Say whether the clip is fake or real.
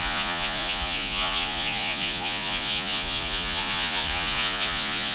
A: fake